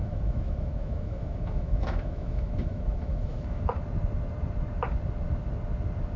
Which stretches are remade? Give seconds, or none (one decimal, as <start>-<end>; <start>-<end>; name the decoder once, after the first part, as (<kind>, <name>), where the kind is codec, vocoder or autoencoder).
0.0-3.7 (autoencoder, DAC-VAE)